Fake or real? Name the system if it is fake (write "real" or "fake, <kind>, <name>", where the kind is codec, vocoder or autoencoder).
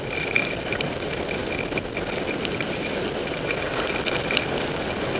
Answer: real